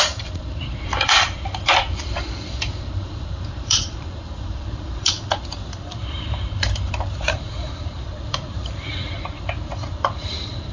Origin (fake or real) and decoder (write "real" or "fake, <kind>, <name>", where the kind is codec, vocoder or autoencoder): fake, vocoder, BigVGAN v2